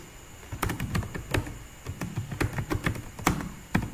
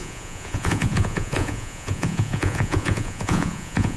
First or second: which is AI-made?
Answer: second